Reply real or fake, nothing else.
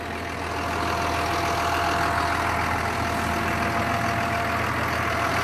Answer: real